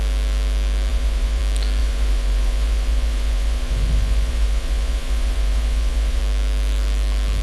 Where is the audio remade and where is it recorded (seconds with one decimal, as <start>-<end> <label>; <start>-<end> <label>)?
0.0-0.9 recorded; 0.9-1.4 remade; 1.4-1.8 recorded; 1.8-6.2 remade; 6.2-7.4 recorded